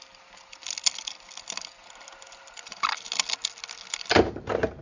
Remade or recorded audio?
recorded